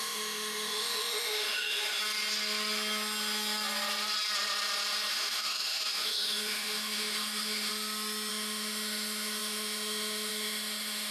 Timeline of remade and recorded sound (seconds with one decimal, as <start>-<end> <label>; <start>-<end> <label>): 0.0-2.0 remade; 2.0-5.1 recorded; 5.1-7.7 remade; 7.7-8.3 recorded; 8.3-11.1 remade